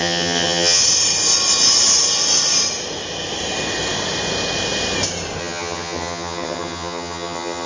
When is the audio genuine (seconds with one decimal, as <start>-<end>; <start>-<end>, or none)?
0.8-5.4